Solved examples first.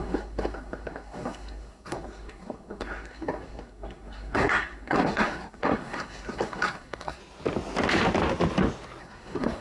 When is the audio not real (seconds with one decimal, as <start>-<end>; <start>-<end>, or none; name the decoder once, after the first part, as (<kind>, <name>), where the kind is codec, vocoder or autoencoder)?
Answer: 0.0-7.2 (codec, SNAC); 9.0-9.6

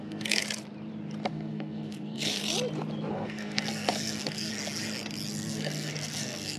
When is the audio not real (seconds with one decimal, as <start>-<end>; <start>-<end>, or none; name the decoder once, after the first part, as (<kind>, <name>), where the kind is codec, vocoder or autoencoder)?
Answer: 0.0-0.4 (codec, SNAC); 1.3-2.4; 3.1-4.5; 5.3-6.6

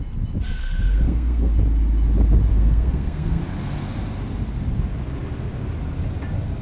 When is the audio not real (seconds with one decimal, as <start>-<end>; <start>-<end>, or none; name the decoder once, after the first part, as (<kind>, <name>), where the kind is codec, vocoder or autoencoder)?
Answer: 0.6-1.5 (codec, SNAC); 2.5-3.4

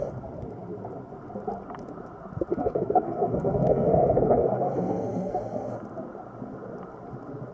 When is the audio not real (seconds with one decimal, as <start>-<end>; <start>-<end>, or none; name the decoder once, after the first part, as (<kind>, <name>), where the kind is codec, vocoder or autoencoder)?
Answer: 2.5-5.7 (codec, SNAC)

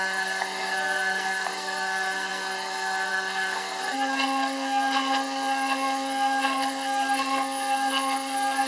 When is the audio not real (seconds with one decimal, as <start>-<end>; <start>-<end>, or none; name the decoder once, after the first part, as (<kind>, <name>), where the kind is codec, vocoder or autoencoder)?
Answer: 0.0-8.7 (codec, SNAC)

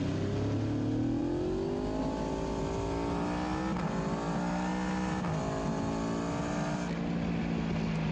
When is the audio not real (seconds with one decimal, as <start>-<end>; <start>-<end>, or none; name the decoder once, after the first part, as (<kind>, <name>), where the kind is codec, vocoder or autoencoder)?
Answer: none

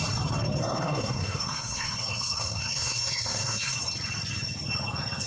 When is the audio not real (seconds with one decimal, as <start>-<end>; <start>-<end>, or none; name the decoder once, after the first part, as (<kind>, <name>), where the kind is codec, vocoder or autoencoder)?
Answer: 0.6-3.8 (codec, SNAC)